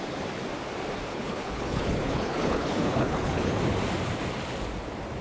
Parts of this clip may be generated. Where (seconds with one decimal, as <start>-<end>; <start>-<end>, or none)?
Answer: 1.1-3.6